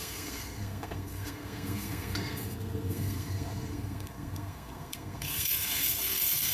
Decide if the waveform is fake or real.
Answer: fake